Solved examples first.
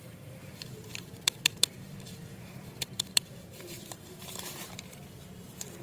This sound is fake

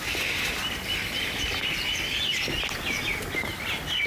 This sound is real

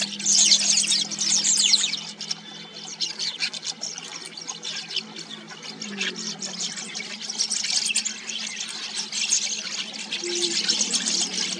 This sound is real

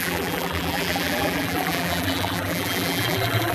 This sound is fake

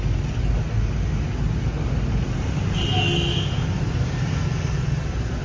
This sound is real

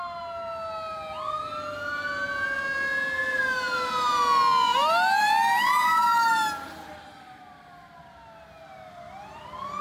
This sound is real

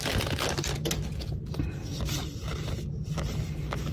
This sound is real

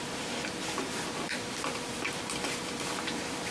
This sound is fake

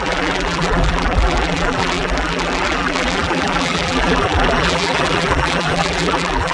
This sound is fake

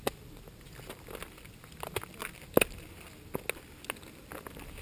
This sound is real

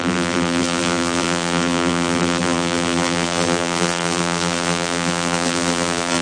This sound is fake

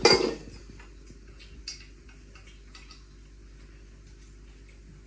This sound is real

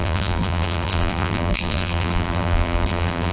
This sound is fake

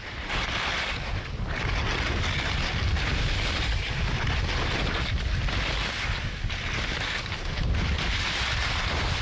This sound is real